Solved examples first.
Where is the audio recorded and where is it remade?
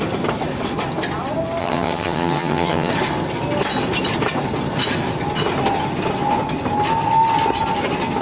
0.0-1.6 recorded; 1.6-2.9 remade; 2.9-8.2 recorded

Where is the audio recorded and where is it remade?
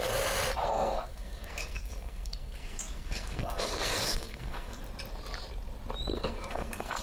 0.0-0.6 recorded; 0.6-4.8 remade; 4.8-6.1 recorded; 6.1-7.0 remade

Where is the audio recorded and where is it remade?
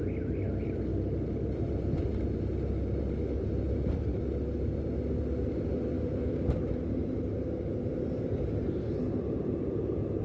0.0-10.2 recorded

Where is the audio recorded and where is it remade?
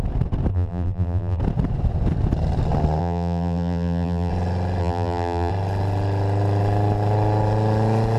0.0-0.5 recorded; 0.5-1.4 remade; 1.4-3.0 recorded; 3.0-4.3 remade; 4.3-4.8 recorded; 4.8-5.5 remade; 5.5-8.2 recorded